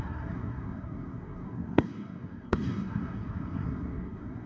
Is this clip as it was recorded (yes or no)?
no